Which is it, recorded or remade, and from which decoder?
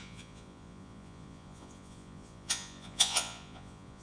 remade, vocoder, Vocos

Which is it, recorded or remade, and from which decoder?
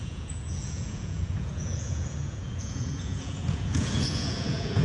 remade, vocoder, Vocos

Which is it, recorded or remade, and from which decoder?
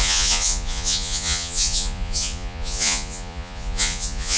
remade, vocoder, Vocos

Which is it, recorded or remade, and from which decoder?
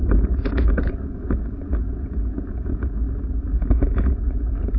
remade, vocoder, Vocos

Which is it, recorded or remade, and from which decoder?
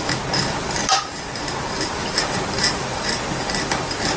recorded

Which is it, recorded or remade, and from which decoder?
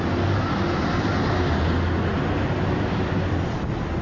recorded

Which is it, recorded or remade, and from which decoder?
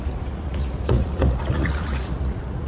remade, vocoder, Vocos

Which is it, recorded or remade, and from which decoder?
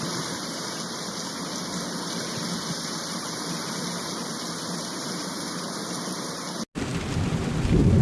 recorded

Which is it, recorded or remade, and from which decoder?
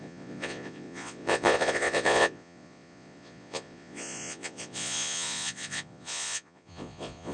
remade, vocoder, Vocos